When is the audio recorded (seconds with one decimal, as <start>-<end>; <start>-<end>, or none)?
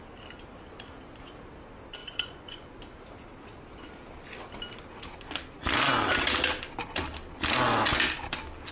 0.0-2.0; 2.7-8.7